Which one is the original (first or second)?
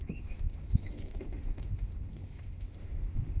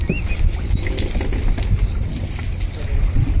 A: second